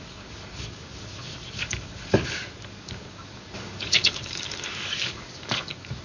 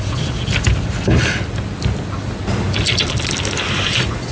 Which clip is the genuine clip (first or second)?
second